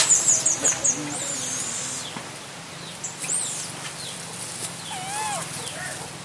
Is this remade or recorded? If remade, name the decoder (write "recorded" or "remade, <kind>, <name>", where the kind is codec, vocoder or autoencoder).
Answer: recorded